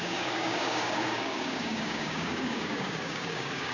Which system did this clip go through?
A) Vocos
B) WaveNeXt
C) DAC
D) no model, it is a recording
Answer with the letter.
C